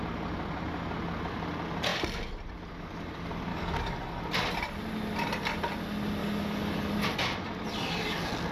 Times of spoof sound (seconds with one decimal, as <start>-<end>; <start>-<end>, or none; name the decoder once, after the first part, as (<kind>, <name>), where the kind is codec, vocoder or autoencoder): 3.5-4.2 (codec, DAC); 6.2-6.9